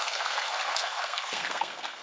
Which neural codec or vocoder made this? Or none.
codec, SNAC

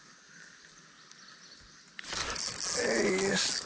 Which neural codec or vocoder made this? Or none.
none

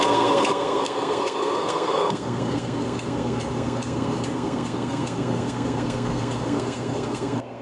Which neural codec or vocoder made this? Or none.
codec, SNAC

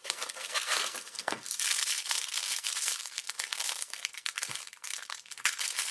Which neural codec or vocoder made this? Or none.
codec, SNAC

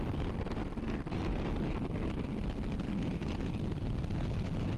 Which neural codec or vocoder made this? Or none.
none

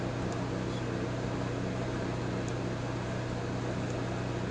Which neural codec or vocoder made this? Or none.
none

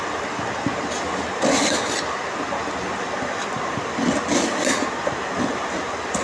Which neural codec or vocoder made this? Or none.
none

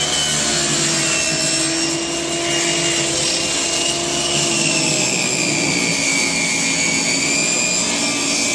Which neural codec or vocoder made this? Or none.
none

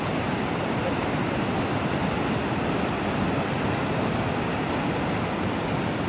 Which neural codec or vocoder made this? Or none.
none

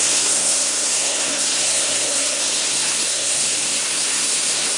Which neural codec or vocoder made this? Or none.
codec, SNAC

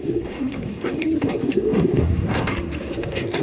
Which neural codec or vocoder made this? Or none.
codec, SNAC